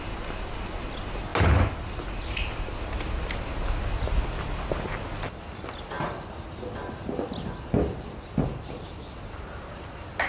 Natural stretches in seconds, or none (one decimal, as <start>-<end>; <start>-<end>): 0.0-10.3